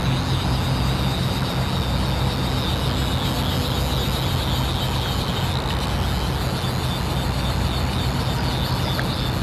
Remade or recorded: recorded